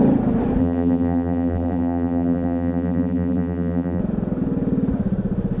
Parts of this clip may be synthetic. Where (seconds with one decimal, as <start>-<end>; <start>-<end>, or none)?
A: 0.6-4.0